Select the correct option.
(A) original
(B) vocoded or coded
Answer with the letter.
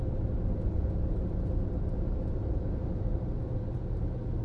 A